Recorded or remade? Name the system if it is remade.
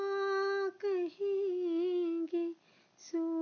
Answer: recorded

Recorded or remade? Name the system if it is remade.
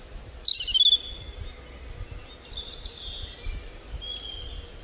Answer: recorded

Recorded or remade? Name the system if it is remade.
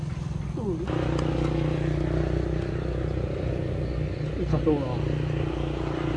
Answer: recorded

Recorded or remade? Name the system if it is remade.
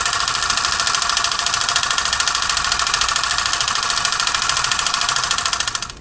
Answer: recorded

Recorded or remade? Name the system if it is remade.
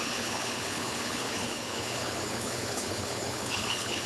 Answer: remade, codec, HILCodec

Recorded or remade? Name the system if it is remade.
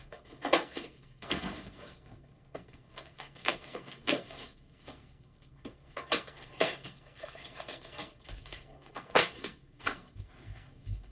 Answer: remade, codec, SNAC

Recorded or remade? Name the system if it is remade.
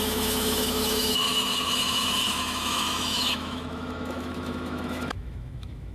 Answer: remade, autoencoder, DAC-VAE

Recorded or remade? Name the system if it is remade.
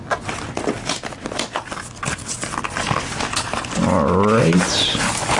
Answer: recorded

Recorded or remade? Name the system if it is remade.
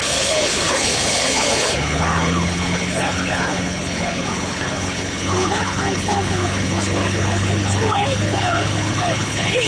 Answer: remade, codec, HILCodec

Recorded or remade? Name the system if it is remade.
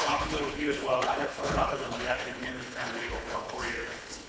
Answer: remade, codec, HILCodec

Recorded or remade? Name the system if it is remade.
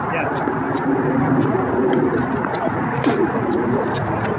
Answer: recorded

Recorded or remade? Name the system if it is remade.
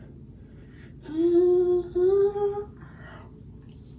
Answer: recorded